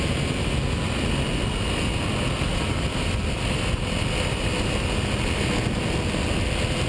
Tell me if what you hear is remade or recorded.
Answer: recorded